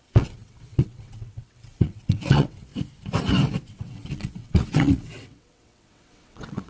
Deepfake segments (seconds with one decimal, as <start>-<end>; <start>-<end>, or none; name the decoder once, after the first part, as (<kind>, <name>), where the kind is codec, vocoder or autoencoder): 0.0-2.7 (vocoder, WaveNeXt); 3.7-6.7